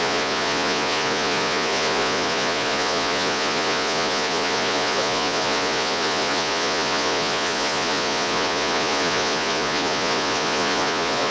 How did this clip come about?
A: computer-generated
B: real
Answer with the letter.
A